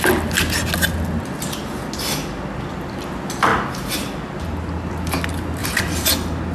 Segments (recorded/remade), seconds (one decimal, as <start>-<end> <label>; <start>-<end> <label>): 0.0-5.6 recorded; 5.6-6.1 remade; 6.1-6.5 recorded